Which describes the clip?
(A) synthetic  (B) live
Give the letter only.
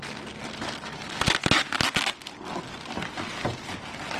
B